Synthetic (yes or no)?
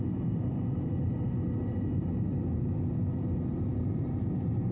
no